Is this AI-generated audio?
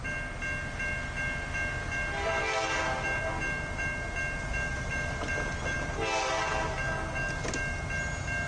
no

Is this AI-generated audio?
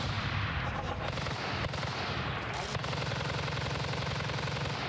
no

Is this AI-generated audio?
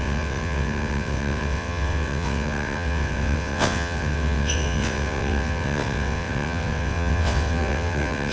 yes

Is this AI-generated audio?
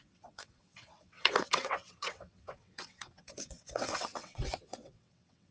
yes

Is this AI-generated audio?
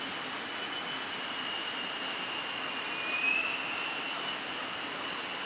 no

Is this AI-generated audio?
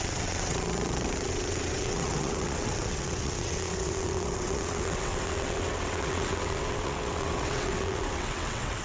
yes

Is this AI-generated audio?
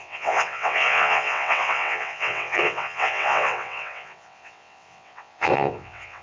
yes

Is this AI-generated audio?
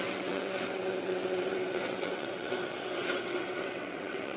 yes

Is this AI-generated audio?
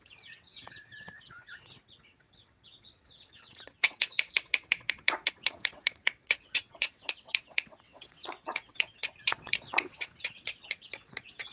yes